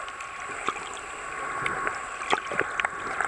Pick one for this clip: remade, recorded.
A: recorded